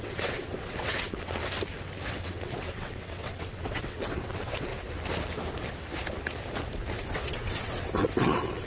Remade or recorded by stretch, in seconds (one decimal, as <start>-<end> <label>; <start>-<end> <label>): 0.0-1.4 remade; 1.4-2.1 recorded; 2.1-4.7 remade; 4.7-7.0 recorded; 7.0-8.7 remade